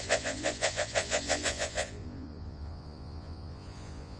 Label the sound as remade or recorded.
remade